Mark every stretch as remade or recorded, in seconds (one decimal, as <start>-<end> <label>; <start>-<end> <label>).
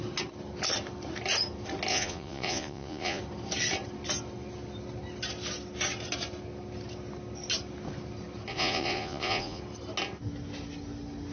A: 0.0-1.9 recorded; 1.9-3.2 remade; 3.2-8.5 recorded; 8.5-9.6 remade; 9.6-11.3 recorded